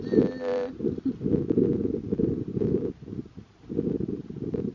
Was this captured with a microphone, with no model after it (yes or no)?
no